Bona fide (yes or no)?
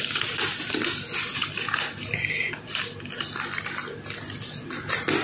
yes